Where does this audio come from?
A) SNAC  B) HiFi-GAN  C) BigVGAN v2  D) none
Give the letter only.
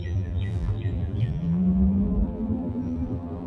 C